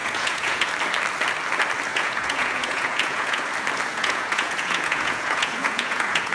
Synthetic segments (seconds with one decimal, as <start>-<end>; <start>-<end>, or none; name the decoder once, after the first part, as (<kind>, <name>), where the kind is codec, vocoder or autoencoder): 0.0-0.7 (vocoder, Vocos); 1.9-3.4; 3.9-6.3